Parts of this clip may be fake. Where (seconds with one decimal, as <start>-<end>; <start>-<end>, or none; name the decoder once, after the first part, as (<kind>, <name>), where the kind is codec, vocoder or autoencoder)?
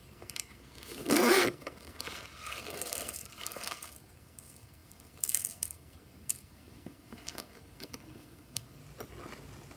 0.0-8.8 (codec, SNAC)